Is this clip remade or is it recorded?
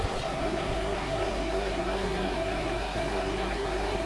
remade